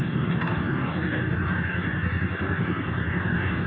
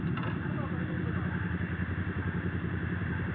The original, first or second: second